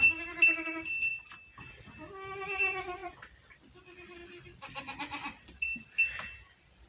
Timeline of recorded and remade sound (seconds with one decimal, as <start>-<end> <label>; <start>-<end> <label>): 0.0-6.9 recorded